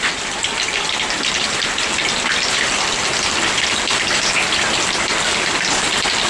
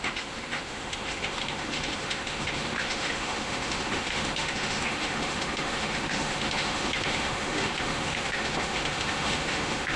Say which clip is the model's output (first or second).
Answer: second